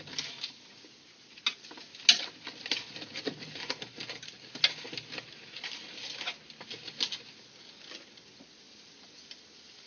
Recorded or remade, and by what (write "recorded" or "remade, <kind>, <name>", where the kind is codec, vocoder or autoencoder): recorded